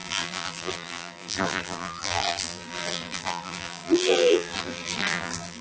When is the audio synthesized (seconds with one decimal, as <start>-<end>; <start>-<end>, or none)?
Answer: 0.0-5.6